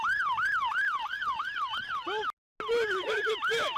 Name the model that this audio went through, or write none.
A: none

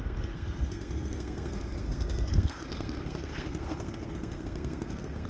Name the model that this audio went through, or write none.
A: codec, SNAC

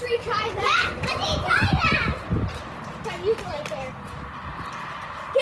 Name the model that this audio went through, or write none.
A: none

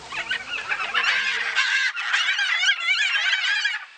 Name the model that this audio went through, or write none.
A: none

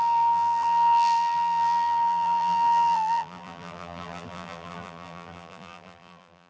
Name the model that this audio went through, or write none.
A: vocoder, BigVGAN v2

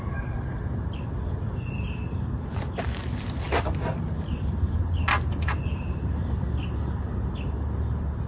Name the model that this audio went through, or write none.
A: none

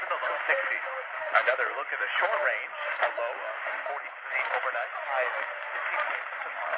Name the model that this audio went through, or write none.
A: none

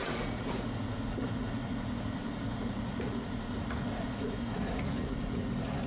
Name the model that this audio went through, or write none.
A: vocoder, Vocos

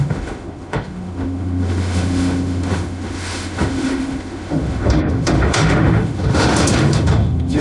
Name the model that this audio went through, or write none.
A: autoencoder, DAC-VAE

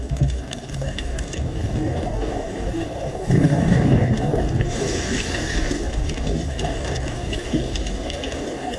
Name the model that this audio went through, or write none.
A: codec, DAC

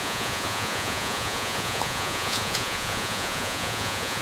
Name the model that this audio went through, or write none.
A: vocoder, Vocos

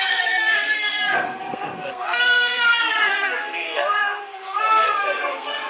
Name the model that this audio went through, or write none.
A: codec, SNAC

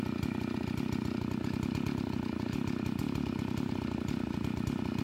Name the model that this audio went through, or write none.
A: none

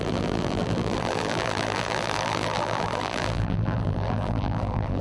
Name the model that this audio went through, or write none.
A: vocoder, BigVGAN v2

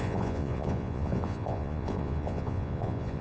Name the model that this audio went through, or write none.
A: vocoder, Vocos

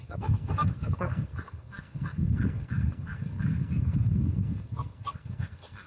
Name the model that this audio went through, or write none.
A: codec, SNAC